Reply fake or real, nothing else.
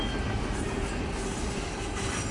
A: real